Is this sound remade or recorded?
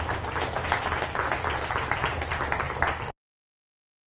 recorded